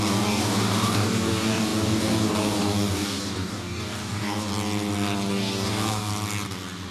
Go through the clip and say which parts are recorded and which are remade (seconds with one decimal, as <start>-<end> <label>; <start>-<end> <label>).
0.0-4.5 remade; 4.5-5.3 recorded; 5.3-6.1 remade; 6.1-6.9 recorded